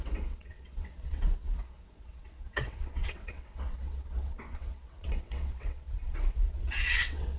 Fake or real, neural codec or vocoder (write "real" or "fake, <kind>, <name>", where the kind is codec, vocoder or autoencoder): fake, vocoder, WaveNeXt